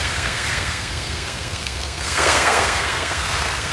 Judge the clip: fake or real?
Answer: fake